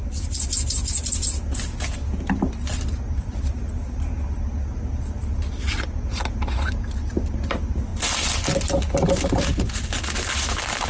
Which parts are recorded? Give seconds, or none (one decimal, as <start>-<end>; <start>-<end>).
0.0-10.9